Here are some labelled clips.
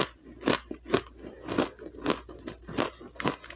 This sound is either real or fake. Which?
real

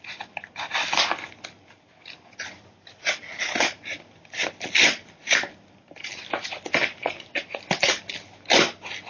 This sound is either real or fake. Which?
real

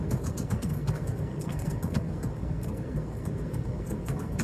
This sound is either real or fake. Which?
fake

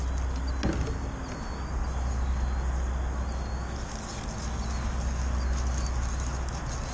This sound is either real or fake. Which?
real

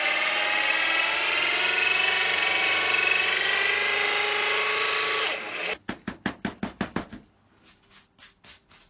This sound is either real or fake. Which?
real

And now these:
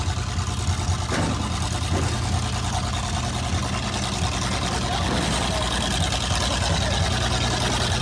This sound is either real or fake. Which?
real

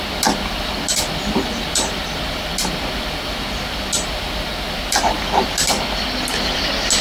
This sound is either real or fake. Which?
real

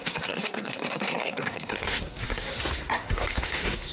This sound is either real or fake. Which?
fake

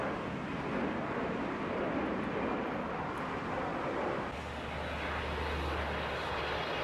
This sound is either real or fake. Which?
real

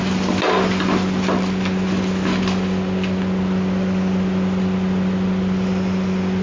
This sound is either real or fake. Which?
real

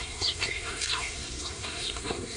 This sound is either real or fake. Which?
fake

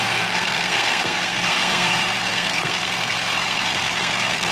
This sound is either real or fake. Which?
fake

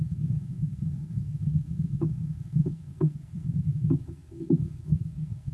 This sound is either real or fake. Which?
fake